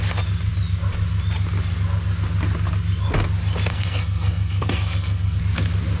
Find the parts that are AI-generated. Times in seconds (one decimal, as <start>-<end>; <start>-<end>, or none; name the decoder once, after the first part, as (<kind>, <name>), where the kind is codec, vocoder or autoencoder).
3.7-5.4 (codec, SNAC)

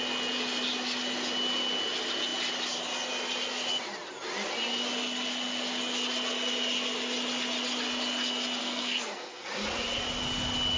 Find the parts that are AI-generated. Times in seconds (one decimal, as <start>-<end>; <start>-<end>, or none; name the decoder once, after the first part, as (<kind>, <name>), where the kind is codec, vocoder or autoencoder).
8.6-9.5 (codec, SNAC)

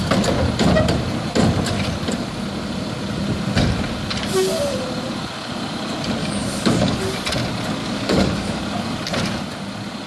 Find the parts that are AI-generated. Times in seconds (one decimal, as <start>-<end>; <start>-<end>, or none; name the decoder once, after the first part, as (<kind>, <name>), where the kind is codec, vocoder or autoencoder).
6.2-7.0 (codec, DAC); 7.8-8.6

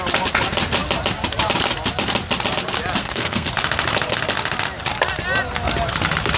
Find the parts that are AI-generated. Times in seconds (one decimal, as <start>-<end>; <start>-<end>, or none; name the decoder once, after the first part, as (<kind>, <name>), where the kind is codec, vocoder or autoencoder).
3.0-3.5 (codec, SNAC)